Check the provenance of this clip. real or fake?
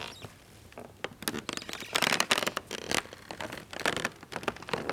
real